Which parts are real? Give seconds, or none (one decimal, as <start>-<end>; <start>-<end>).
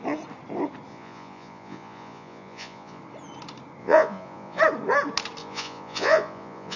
0.0-0.9; 3.0-3.8; 4.6-5.4